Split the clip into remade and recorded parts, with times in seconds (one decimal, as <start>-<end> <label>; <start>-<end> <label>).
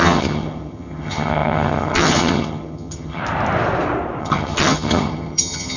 0.0-3.2 remade; 3.2-4.2 recorded; 4.2-5.8 remade